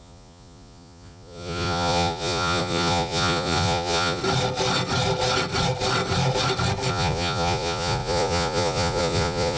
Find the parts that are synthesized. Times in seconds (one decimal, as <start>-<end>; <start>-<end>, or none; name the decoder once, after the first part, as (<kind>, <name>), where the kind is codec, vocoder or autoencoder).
0.0-4.2 (vocoder, Vocos); 6.9-9.6